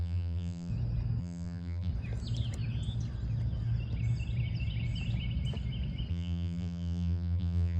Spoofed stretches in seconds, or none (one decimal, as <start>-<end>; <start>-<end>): 0.0-0.7; 1.2-1.9; 6.1-7.8